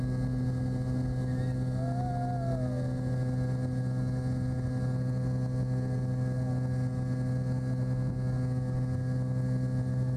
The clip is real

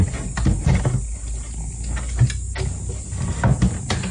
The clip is real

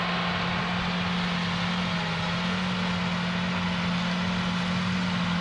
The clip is real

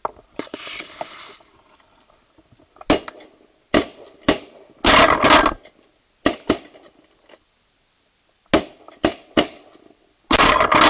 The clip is real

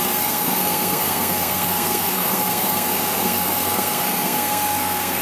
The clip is fake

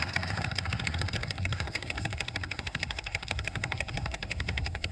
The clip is fake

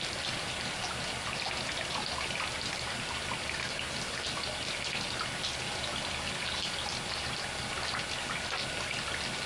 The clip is real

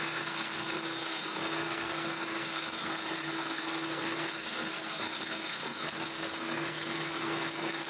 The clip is fake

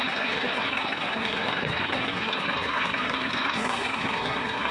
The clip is fake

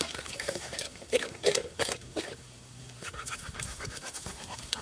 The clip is fake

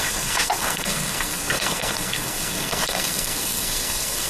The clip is fake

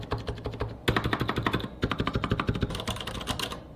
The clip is real